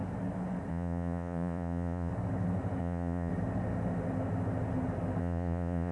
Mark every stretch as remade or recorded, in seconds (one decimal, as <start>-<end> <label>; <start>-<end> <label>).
0.0-0.7 recorded; 0.7-2.1 remade; 2.1-2.8 recorded; 2.8-3.3 remade; 3.3-5.2 recorded; 5.2-5.9 remade